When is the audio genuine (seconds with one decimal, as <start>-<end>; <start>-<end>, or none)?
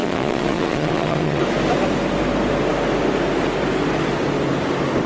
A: 1.4-5.1